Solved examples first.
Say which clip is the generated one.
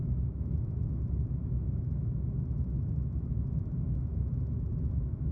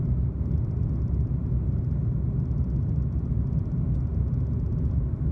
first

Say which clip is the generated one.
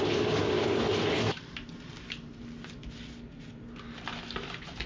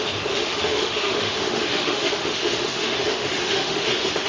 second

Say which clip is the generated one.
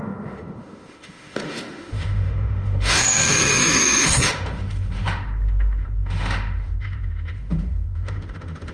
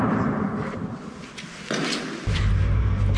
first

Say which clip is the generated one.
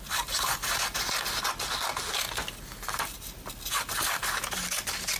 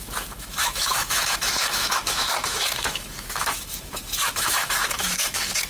second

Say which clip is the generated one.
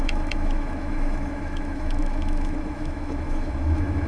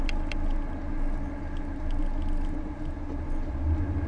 first